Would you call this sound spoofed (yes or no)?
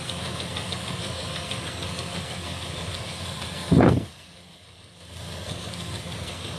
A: yes